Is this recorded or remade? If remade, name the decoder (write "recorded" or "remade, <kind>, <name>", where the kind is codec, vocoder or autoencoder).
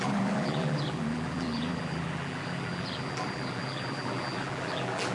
remade, vocoder, BigVGAN v2